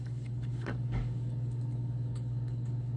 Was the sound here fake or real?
fake